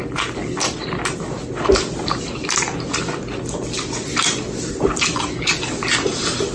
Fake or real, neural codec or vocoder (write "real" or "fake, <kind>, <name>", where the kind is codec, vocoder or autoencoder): real